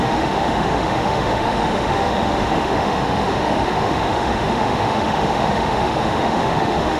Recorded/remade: remade